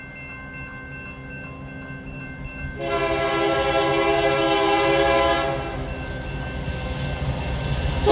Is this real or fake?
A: real